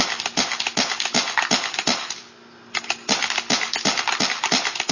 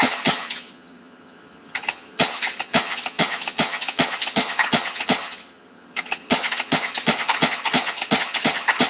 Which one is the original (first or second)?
first